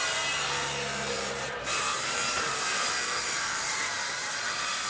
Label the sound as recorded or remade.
remade